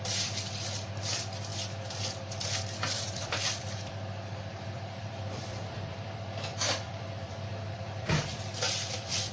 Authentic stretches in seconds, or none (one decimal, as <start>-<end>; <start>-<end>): none